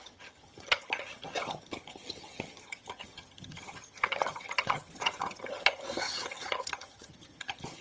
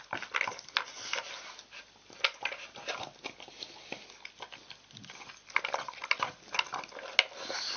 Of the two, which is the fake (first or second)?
first